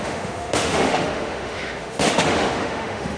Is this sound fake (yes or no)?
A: yes